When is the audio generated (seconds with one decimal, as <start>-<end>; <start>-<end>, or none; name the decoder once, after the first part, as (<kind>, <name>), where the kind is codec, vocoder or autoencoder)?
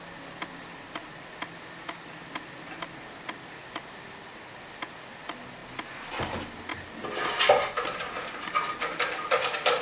none